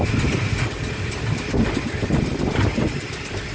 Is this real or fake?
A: fake